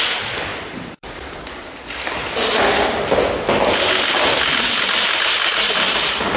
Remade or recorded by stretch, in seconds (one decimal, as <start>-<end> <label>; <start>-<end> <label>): 0.0-0.5 recorded; 0.5-1.3 remade; 1.3-5.5 recorded; 5.5-6.4 remade